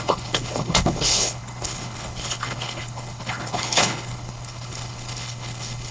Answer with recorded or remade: remade